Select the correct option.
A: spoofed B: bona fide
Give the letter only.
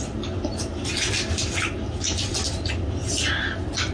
B